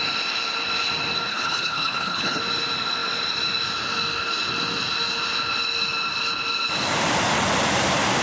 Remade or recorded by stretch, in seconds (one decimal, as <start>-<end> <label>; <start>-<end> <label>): 0.0-1.3 recorded; 1.3-2.4 remade; 2.4-8.2 recorded